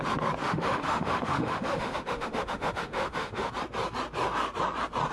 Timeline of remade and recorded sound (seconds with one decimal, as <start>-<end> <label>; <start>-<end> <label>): 0.0-0.4 recorded; 0.4-3.5 remade; 3.5-5.1 recorded